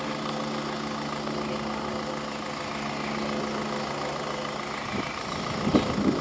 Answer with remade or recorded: recorded